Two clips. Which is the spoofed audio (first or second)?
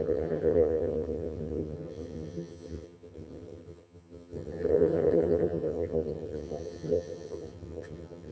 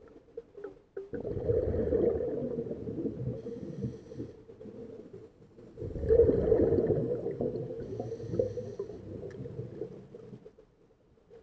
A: first